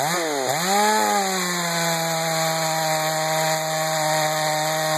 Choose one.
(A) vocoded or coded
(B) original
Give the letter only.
B